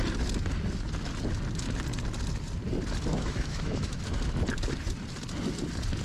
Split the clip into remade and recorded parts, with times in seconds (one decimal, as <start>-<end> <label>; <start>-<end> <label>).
0.0-3.1 recorded; 3.1-4.0 remade; 4.0-6.0 recorded